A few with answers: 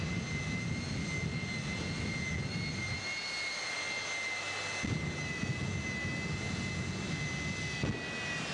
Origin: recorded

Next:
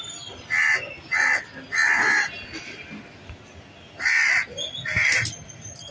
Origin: recorded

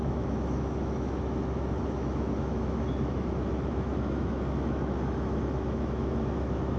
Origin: remade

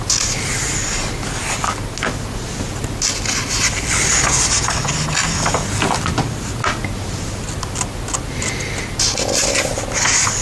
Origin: recorded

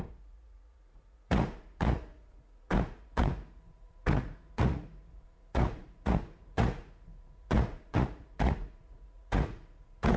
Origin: remade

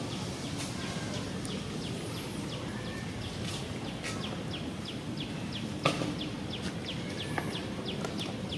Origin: recorded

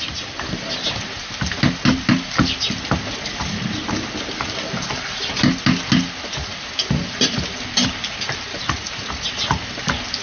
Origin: recorded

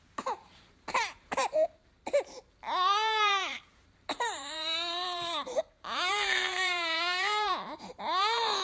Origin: remade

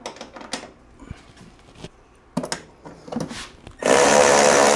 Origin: recorded